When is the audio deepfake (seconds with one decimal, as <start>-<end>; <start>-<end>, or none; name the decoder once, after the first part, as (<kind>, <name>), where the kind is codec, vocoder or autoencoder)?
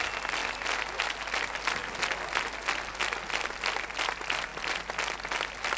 none